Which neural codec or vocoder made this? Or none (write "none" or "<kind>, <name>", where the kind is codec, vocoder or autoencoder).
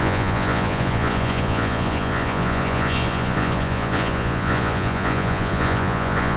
vocoder, Vocos